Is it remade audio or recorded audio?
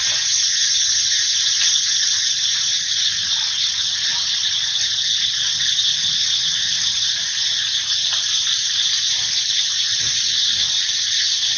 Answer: recorded